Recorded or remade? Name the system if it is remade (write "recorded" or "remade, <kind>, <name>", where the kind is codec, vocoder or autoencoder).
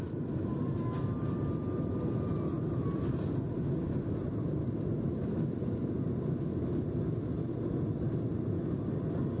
recorded